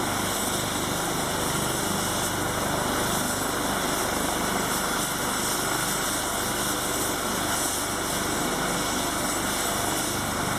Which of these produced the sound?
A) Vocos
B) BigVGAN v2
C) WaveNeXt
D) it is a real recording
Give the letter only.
D